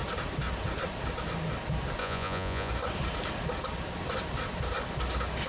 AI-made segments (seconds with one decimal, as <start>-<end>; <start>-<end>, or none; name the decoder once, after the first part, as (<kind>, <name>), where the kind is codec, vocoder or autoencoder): 2.0-2.7 (vocoder, Vocos)